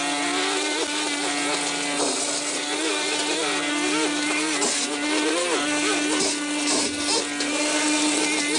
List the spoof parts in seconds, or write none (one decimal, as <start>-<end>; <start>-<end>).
none